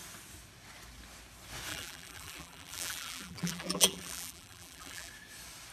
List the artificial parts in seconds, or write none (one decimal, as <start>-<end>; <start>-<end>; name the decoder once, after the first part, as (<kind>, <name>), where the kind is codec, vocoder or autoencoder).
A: 1.7-5.1 (vocoder, BigVGAN v2)